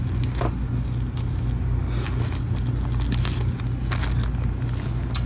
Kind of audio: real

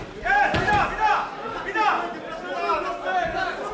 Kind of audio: real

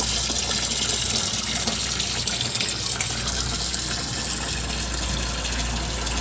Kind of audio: real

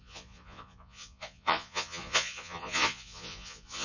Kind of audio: fake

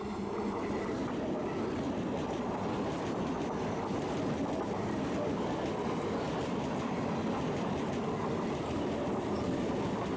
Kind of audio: real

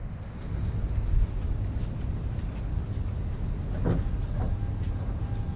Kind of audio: real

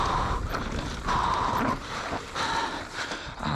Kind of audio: real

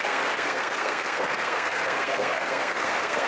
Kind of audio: fake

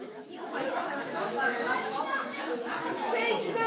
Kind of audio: fake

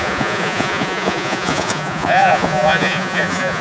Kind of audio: fake